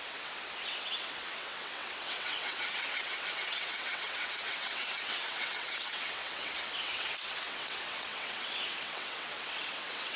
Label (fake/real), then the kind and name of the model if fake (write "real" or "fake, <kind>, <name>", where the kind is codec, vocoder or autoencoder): fake, vocoder, WaveNeXt